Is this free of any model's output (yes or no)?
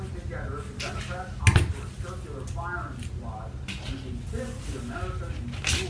yes